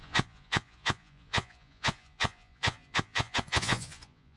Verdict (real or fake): fake